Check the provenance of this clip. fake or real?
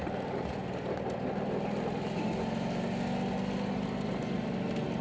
real